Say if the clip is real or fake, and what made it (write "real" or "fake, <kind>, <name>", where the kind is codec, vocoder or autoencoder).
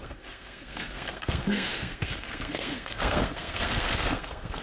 fake, codec, SNAC